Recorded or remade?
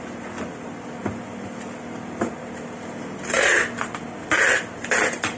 recorded